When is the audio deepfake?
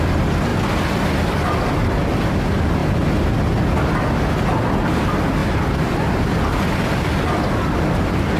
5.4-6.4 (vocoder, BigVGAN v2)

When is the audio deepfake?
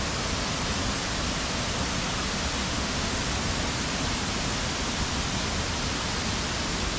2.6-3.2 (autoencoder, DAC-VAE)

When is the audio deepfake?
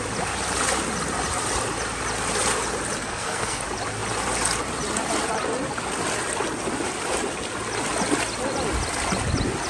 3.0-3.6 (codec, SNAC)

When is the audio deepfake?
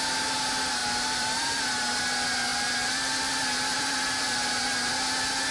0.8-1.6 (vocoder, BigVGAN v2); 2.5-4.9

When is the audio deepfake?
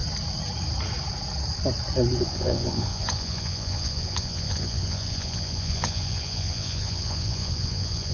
2.2-8.1 (vocoder, Vocos)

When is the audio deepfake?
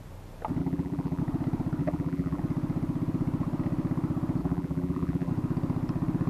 0.6-1.2 (vocoder, BigVGAN v2); 1.8-2.4; 4.4-5.3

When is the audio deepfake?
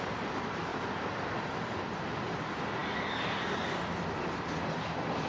none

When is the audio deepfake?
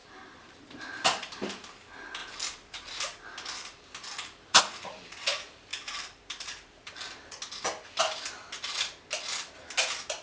0.0-1.5 (vocoder, BigVGAN v2); 2.2-4.6; 5.7-7.3